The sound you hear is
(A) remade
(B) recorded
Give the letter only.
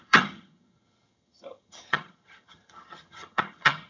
A